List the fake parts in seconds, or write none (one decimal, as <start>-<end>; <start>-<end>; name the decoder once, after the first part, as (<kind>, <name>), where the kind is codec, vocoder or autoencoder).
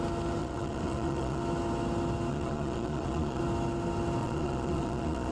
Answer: 0.4-1.4 (vocoder, Vocos); 2.3-3.4; 4.2-5.3